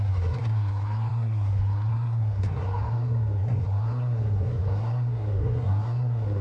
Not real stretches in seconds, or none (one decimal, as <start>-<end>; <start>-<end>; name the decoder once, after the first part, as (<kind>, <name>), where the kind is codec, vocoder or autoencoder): 0.0-6.4 (codec, SNAC)